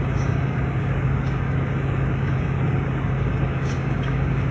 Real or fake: fake